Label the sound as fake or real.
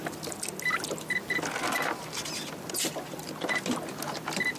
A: real